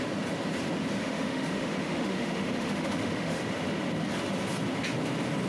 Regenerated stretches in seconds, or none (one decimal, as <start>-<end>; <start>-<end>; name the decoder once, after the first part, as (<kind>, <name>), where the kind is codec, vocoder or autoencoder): 1.0-3.4 (autoencoder, DAC-VAE)